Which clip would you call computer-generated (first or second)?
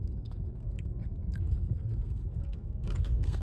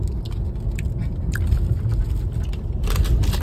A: first